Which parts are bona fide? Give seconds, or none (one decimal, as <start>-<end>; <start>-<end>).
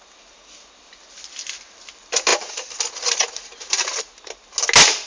0.0-5.1